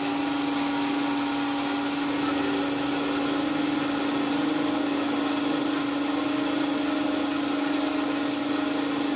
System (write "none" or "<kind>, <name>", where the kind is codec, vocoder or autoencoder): none